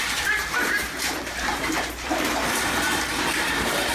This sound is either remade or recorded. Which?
remade